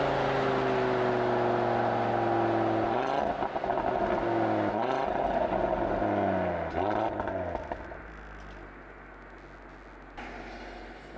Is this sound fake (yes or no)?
no